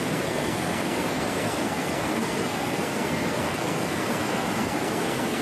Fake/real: fake